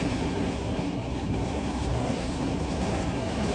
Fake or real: fake